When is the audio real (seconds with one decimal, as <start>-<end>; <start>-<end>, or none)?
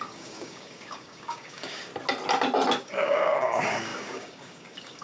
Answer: 1.9-2.8